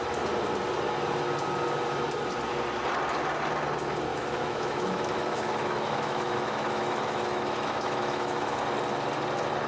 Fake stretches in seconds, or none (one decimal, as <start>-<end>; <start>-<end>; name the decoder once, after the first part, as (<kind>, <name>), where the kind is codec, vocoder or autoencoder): 4.1-8.6 (autoencoder, DAC-VAE)